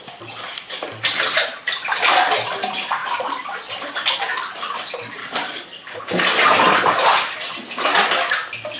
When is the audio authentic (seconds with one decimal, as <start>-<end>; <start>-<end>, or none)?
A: 0.0-5.2; 6.0-8.8